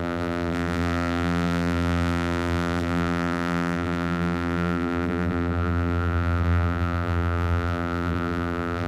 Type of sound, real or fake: fake